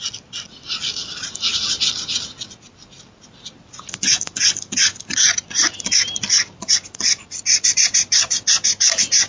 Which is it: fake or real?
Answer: real